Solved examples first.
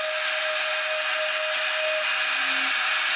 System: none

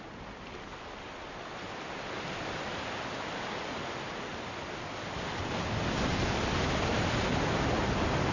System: none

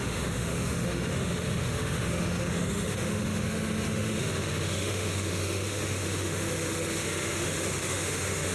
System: autoencoder, DAC-VAE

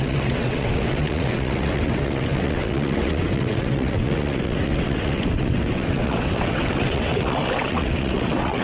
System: vocoder, WaveNeXt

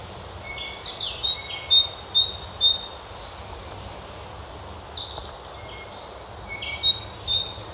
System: none